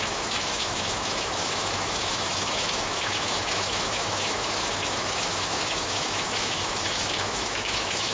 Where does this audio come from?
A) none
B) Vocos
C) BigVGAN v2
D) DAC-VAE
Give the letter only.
D